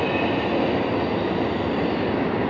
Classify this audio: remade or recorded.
recorded